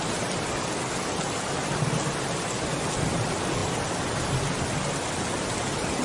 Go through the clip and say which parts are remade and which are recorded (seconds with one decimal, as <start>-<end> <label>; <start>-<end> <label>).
0.0-6.0 recorded